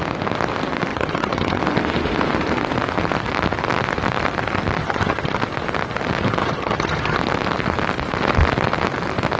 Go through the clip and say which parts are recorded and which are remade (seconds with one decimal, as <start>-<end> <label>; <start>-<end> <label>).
0.0-0.9 recorded; 0.9-1.6 remade; 1.6-4.8 recorded; 4.8-5.4 remade; 5.4-6.4 recorded; 6.4-7.2 remade; 7.2-9.4 recorded